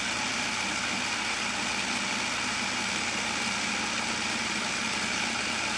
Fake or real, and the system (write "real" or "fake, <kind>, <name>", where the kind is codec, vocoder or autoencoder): real